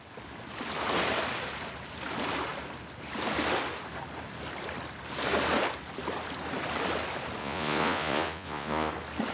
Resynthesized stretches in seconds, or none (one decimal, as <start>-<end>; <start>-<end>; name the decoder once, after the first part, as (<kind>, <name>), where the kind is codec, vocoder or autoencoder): 7.4-8.9 (vocoder, Vocos)